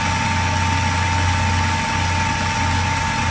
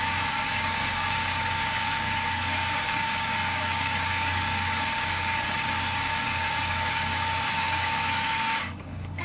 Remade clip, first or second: second